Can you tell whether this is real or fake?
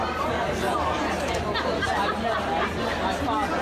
real